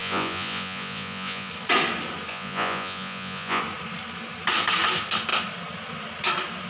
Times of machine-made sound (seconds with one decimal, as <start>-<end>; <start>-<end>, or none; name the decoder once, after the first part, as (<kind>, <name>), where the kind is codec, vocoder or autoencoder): 0.0-1.5 (vocoder, Vocos); 2.3-3.6